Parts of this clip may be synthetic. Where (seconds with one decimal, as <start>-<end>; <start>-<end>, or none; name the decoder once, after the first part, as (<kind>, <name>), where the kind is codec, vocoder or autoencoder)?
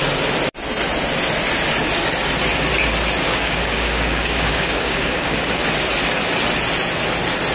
3.3-5.6 (codec, DAC)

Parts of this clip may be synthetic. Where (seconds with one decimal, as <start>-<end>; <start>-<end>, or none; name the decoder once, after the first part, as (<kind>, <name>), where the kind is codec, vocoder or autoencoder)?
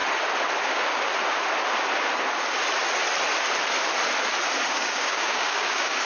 0.6-1.1 (codec, DAC); 4.7-6.1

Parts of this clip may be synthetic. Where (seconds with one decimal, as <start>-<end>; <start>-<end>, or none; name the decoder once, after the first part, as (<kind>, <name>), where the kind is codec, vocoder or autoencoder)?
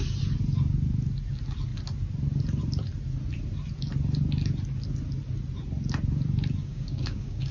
6.6-7.5 (codec, DAC)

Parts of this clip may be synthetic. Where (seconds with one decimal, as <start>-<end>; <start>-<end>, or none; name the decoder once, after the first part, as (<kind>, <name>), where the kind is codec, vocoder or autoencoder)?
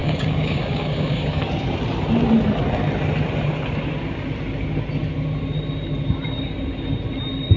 0.0-1.4 (codec, DAC)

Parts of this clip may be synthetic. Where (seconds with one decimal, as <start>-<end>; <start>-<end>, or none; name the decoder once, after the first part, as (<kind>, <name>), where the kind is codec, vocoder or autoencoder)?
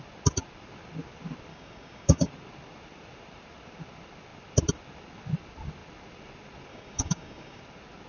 1.5-2.3 (codec, DAC); 6.7-7.6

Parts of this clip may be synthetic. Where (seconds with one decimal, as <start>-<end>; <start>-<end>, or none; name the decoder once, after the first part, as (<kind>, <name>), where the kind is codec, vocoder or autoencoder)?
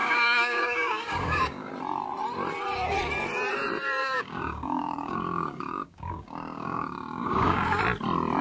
0.0-1.7 (codec, DAC); 4.0-7.8